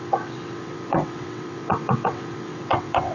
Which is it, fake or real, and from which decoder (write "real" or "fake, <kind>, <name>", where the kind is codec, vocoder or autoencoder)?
fake, vocoder, WaveNeXt